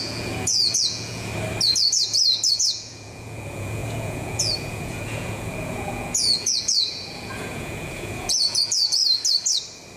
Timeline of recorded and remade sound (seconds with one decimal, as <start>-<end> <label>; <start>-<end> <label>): 0.0-1.3 remade; 1.3-2.5 recorded; 2.5-9.0 remade; 9.0-10.0 recorded